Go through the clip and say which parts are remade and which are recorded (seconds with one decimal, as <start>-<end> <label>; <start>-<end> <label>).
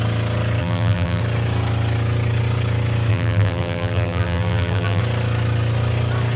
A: 0.0-0.6 recorded; 0.6-1.2 remade; 1.2-3.1 recorded; 3.1-5.0 remade; 5.0-6.4 recorded